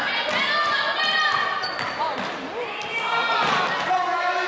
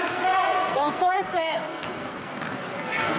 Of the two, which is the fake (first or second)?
second